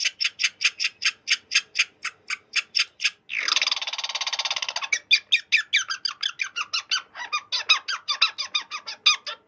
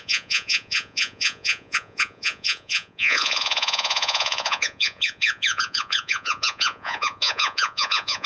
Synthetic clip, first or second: second